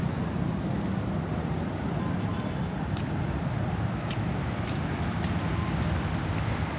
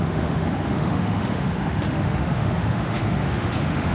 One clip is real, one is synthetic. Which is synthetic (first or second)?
second